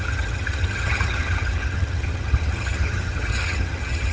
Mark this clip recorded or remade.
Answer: remade